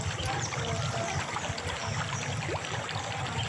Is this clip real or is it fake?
real